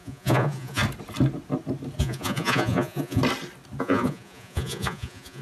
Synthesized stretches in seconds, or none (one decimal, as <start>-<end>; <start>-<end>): 0.0-0.8; 2.0-3.2; 3.8-5.4